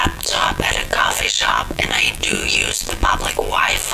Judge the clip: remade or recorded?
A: remade